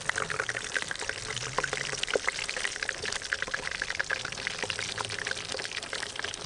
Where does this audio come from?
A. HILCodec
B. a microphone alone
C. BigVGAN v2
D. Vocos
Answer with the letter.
B